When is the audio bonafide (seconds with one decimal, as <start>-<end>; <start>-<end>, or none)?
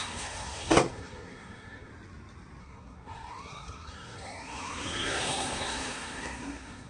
1.9-2.6